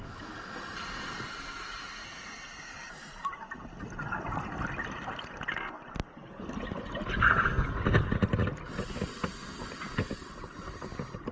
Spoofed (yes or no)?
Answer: no